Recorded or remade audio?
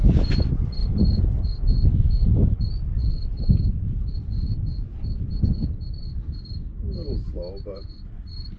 recorded